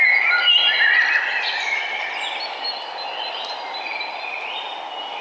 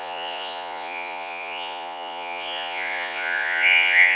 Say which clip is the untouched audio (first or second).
first